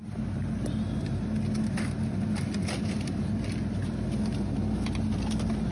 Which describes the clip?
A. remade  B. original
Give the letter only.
B